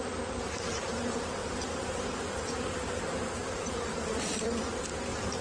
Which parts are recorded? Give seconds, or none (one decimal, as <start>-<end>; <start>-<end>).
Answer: 0.0-1.4; 4.6-5.4